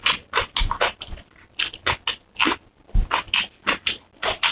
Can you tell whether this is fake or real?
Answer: real